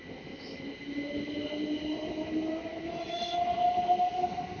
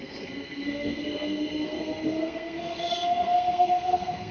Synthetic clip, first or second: second